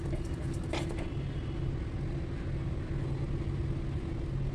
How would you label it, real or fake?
real